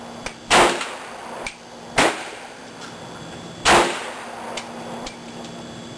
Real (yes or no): no